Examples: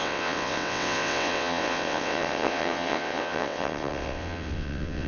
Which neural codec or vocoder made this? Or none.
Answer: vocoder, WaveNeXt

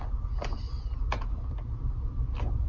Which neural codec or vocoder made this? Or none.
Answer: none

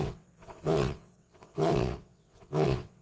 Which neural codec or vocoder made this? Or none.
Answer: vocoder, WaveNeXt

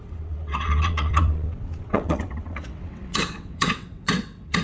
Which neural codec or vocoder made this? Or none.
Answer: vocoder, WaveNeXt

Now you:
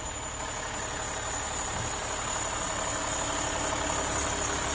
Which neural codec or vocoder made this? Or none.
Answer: none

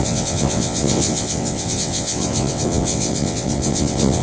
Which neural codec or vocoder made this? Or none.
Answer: vocoder, WaveNeXt